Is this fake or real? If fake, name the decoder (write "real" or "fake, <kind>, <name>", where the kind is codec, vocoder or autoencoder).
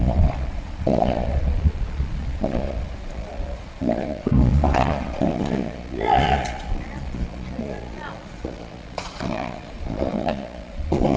fake, vocoder, Vocos